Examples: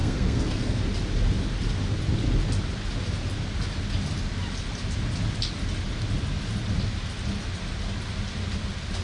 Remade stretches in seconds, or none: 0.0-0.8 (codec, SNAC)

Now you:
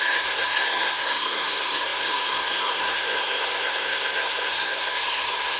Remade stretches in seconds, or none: 0.0-5.6 (codec, SNAC)

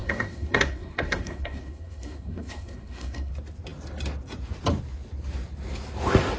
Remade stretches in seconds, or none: 0.0-3.3 (codec, SNAC)